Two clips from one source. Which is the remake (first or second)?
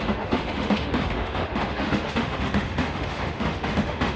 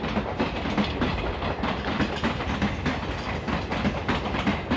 first